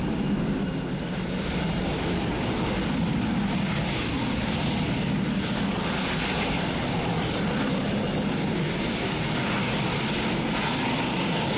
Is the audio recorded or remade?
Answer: recorded